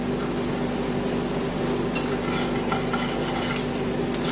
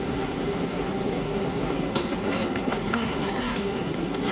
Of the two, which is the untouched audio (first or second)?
first